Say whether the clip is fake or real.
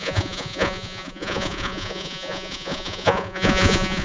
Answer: fake